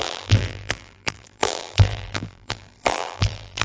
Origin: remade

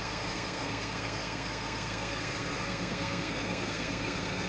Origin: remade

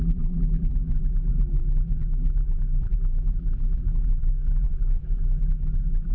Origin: remade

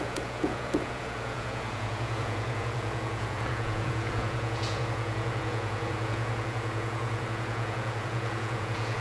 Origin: remade